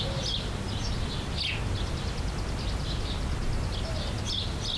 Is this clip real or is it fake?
real